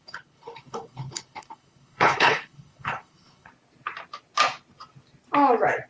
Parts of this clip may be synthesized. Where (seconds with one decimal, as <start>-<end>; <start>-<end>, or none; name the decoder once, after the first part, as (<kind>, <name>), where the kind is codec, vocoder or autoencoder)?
0.0-3.5 (codec, HILCodec)